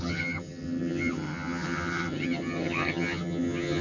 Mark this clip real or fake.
fake